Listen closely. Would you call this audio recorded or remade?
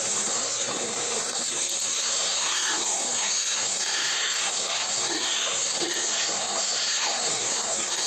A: remade